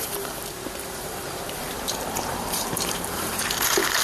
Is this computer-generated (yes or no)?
yes